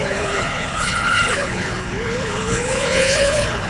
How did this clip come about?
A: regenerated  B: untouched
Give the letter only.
A